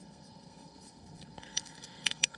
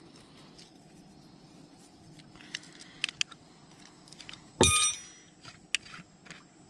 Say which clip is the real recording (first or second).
second